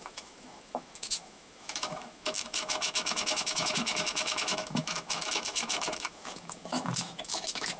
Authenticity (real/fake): fake